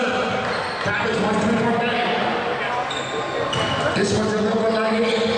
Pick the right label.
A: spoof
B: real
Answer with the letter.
B